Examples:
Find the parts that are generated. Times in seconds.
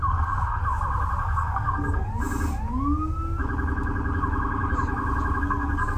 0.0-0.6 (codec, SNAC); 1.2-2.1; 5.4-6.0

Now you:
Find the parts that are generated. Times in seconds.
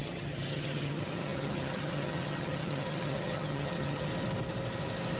0.0-4.1 (vocoder, HiFi-GAN)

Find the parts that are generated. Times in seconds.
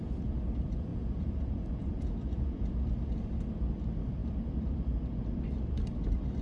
0.9-2.8 (vocoder, Vocos)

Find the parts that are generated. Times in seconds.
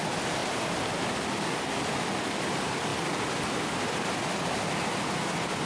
none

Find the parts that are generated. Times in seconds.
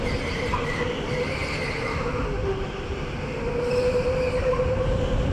none